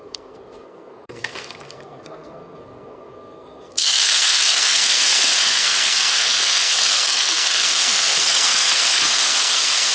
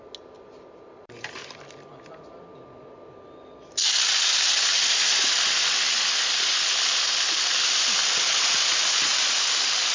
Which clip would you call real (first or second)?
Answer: second